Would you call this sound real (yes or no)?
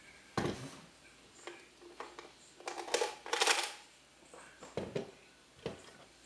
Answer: yes